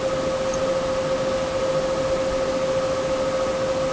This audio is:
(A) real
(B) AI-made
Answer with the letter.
A